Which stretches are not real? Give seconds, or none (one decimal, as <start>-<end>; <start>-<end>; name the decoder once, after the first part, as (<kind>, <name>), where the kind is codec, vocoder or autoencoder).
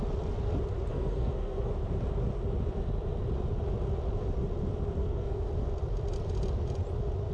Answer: 0.9-1.7 (codec, SNAC); 5.0-5.5